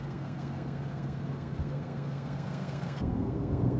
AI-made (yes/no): yes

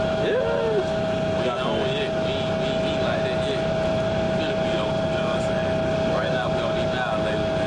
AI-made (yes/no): no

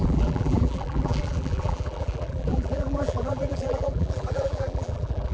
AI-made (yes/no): yes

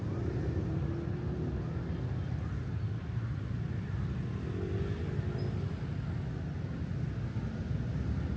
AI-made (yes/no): no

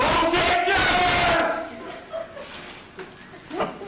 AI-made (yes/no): no